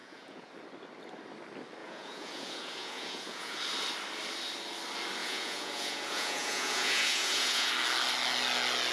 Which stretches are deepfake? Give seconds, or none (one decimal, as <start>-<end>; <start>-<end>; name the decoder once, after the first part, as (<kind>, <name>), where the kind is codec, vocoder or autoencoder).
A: 0.0-0.5 (vocoder, Vocos); 1.8-3.6; 5.2-7.7